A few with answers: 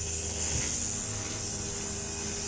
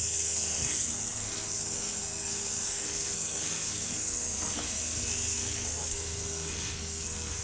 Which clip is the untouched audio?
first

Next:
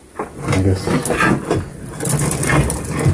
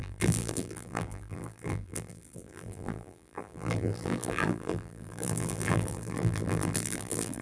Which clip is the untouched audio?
first